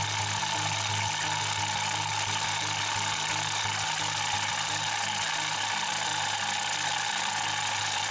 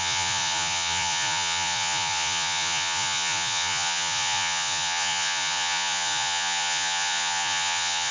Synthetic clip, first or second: second